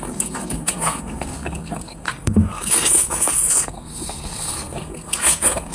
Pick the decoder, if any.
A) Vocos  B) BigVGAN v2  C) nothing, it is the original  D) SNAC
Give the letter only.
D